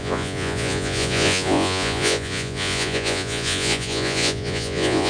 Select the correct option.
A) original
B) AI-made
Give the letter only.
B